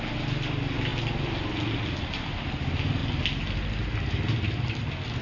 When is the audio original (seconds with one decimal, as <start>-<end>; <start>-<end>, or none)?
0.0-5.2